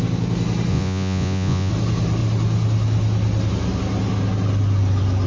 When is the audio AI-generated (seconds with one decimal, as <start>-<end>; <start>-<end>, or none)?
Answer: 0.7-1.7